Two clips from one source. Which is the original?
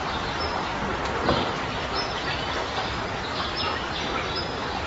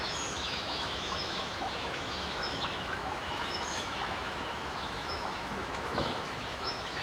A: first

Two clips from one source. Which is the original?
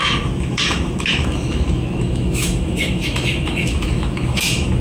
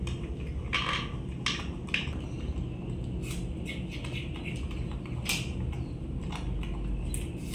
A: second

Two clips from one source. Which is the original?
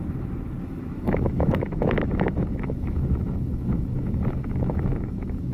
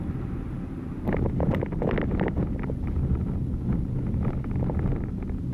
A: second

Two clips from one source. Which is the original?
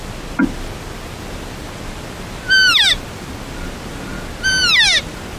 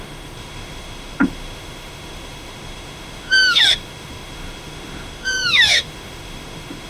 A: first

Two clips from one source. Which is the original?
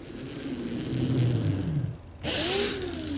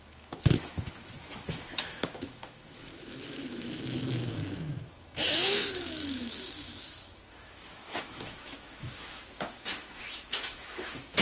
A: first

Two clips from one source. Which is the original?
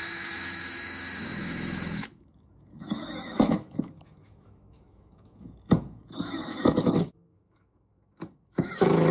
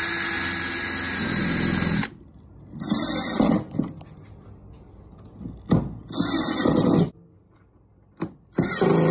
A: second